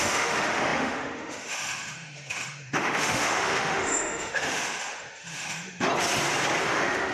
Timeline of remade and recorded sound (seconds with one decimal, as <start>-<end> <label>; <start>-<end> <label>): 0.0-5.9 remade; 5.9-6.6 recorded; 6.6-7.1 remade